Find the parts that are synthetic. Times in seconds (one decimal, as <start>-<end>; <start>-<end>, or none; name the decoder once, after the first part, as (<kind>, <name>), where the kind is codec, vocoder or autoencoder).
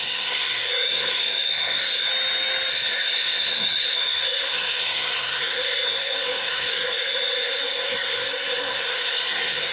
0.0-2.1 (codec, SNAC); 2.7-9.7